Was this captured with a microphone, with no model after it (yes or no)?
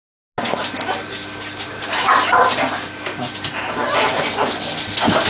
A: yes